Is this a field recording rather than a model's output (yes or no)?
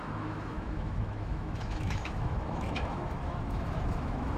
no